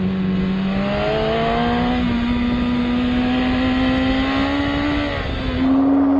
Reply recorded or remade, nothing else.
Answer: recorded